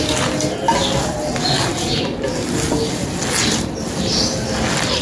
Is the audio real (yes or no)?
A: yes